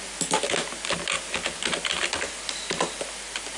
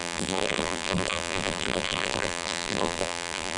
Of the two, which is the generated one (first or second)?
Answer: second